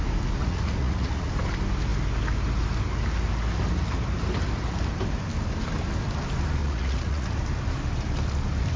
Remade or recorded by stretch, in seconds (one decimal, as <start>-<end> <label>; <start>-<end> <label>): 0.0-0.4 recorded; 0.4-1.3 remade; 1.3-6.6 recorded; 6.6-7.3 remade; 7.3-8.8 recorded